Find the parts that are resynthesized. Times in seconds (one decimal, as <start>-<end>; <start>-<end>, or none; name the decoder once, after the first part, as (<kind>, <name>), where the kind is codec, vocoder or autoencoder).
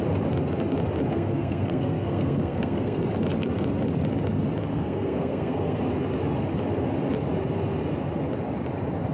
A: 1.1-3.0 (codec, SNAC); 4.7-5.8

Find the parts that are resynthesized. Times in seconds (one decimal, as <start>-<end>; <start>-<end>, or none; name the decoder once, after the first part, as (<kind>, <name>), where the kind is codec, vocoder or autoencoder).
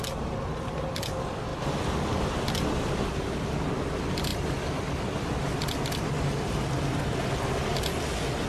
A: none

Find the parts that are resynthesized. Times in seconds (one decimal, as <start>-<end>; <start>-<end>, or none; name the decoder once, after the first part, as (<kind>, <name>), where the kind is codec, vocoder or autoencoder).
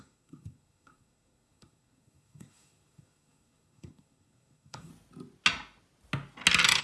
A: 0.0-4.9 (codec, SNAC)